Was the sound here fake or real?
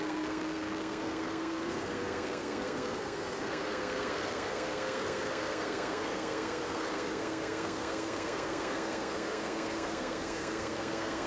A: fake